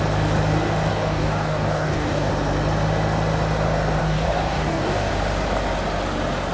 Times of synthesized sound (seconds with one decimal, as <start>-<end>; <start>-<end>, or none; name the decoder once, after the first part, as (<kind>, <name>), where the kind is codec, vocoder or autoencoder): 0.9-2.3 (codec, DAC); 4.0-5.1